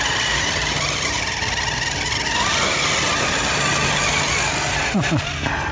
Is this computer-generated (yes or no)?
no